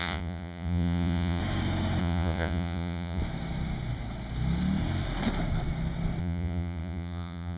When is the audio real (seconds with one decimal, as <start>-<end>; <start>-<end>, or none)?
1.4-2.0; 3.2-6.2

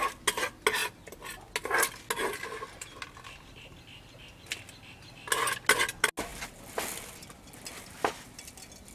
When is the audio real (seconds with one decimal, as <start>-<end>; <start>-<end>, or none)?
0.0-8.9

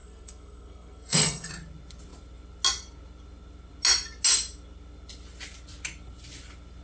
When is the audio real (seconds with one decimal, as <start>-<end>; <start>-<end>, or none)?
1.5-6.8

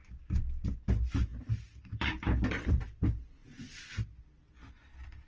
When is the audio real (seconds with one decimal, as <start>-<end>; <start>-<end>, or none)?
0.0-1.3; 2.8-5.3